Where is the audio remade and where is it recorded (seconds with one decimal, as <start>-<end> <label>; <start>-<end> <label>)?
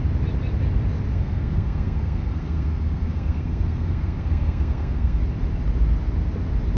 0.0-1.1 recorded; 1.1-5.2 remade; 5.2-6.8 recorded